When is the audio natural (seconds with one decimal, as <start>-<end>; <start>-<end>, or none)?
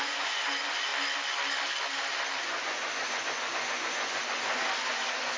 0.9-2.4